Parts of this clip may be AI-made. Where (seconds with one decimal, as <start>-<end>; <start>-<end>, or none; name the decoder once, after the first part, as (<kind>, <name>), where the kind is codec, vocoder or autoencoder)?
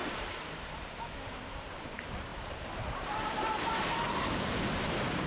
0.0-5.3 (vocoder, BigVGAN v2)